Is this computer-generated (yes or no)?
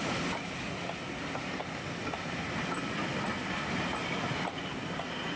no